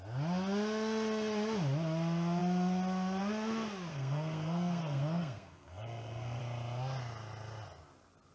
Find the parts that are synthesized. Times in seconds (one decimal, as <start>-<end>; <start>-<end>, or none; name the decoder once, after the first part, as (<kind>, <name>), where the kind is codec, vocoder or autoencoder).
3.9-6.4 (codec, SNAC)